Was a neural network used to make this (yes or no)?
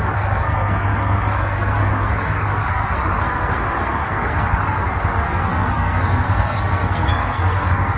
yes